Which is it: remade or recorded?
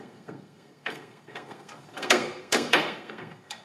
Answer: remade